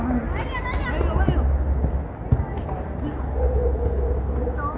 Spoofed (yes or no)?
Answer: no